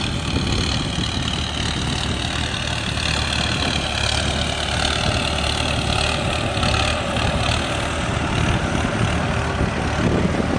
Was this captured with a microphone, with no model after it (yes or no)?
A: yes